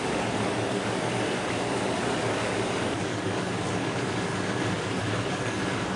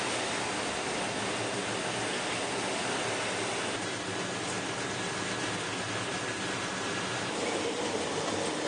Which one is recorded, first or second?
second